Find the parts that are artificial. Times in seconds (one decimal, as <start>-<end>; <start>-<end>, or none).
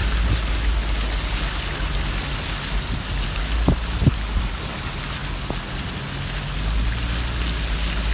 none